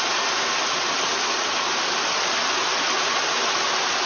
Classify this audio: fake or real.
real